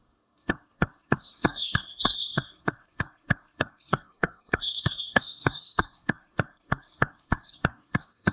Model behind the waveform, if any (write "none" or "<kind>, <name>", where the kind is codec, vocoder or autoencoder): codec, SNAC